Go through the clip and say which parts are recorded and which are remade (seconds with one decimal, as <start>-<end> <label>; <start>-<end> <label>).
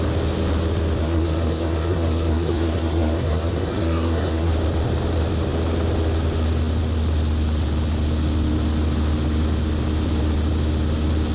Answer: 0.0-1.0 recorded; 1.0-4.5 remade; 4.5-11.3 recorded